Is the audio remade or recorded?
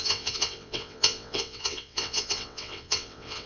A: remade